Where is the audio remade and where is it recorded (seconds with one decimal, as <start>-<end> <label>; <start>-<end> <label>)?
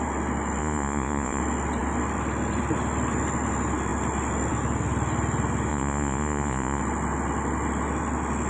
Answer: 0.0-0.6 recorded; 0.6-1.4 remade; 1.4-5.7 recorded; 5.7-6.8 remade; 6.8-8.5 recorded